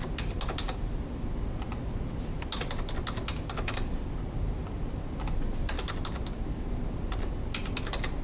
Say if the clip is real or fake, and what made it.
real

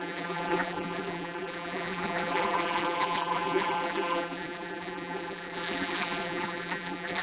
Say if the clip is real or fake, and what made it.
fake, vocoder, BigVGAN v2